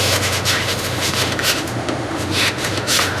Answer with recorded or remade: remade